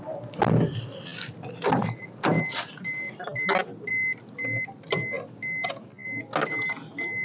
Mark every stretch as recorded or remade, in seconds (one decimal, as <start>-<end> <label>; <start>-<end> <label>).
0.0-7.2 recorded